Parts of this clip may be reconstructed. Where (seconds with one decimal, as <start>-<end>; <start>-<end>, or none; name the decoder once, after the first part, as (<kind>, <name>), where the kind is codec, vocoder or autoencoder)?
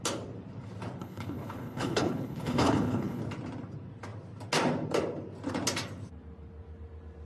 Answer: 1.0-3.2 (codec, HILCodec)